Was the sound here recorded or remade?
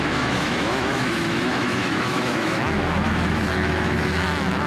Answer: remade